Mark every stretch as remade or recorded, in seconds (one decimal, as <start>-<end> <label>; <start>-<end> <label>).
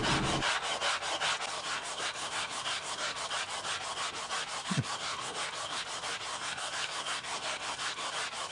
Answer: 0.0-1.5 recorded; 1.5-3.2 remade; 3.2-4.6 recorded; 4.6-5.8 remade; 5.8-6.3 recorded; 6.3-8.1 remade; 8.1-8.5 recorded